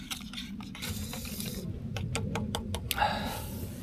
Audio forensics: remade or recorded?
recorded